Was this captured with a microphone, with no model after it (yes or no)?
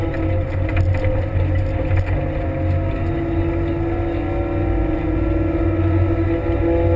yes